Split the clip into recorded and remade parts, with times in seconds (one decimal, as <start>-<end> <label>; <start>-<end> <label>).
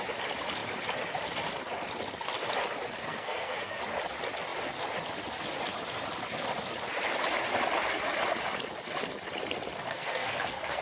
0.0-3.0 recorded; 3.0-3.8 remade; 3.8-9.9 recorded; 9.9-10.8 remade